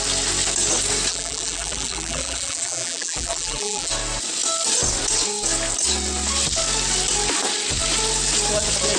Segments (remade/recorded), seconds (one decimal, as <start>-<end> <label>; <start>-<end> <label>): 0.0-1.1 recorded; 1.1-3.9 remade; 3.9-9.0 recorded